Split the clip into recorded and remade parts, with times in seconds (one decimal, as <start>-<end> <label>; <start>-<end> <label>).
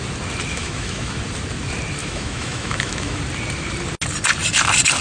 0.0-0.5 recorded; 0.5-1.2 remade; 1.2-2.0 recorded; 2.0-3.2 remade; 3.2-5.0 recorded